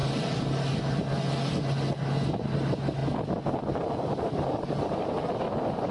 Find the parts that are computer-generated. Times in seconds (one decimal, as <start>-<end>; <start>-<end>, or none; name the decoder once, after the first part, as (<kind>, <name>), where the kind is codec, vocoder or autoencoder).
none